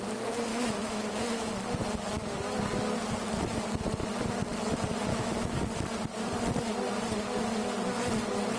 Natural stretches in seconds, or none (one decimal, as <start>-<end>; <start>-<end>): 0.0-0.5; 1.5-5.1; 5.6-8.6